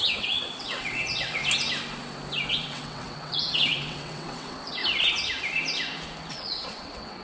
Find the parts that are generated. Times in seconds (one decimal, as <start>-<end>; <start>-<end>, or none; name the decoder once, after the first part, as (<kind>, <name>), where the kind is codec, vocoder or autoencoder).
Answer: 0.0-1.4 (vocoder, WaveNeXt); 2.5-4.8; 6.3-7.2